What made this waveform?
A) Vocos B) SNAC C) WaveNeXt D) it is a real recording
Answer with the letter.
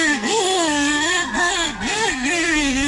B